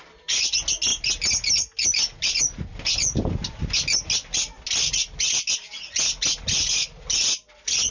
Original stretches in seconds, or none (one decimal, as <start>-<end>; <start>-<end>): 0.0-7.9